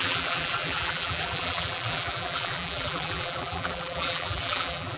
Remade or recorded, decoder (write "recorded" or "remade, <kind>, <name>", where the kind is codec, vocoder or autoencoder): remade, vocoder, BigVGAN v2